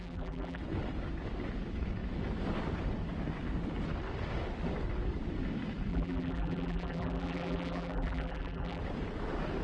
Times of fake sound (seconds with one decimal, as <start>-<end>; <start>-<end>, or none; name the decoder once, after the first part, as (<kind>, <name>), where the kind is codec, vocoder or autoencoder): 0.0-0.6 (vocoder, BigVGAN v2); 5.9-8.8